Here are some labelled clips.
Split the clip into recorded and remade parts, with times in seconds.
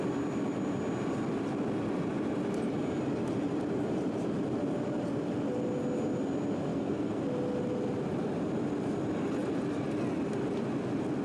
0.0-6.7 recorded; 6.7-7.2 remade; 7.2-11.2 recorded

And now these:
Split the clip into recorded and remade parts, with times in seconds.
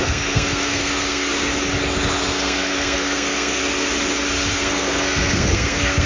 0.0-1.3 remade; 1.3-2.3 recorded; 2.3-3.6 remade; 3.6-4.5 recorded; 4.5-6.1 remade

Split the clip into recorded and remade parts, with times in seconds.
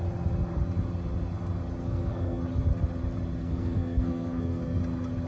0.0-1.8 recorded; 1.8-2.4 remade; 2.4-3.4 recorded; 3.4-4.8 remade; 4.8-5.3 recorded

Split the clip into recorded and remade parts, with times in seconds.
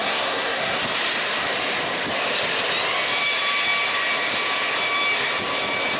0.0-0.8 remade; 0.8-6.0 recorded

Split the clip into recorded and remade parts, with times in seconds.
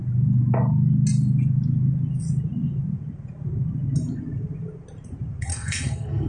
0.0-5.5 recorded; 5.5-6.3 remade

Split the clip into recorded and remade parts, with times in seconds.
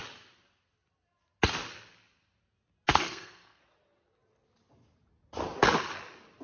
0.0-2.9 recorded; 2.9-3.6 remade; 3.6-6.4 recorded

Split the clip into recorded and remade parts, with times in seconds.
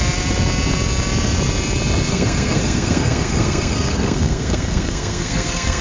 0.0-2.1 recorded; 2.1-5.8 remade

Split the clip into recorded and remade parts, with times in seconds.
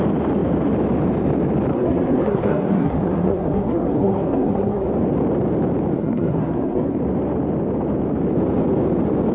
0.0-1.7 recorded; 1.7-4.9 remade; 4.9-5.9 recorded; 5.9-7.0 remade; 7.0-9.3 recorded